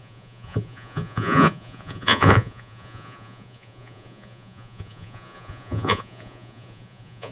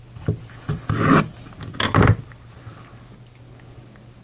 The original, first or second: second